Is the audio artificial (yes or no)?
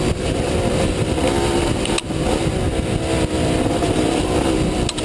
no